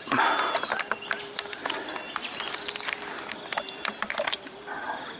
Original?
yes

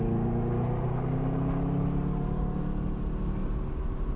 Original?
yes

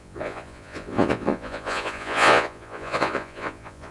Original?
no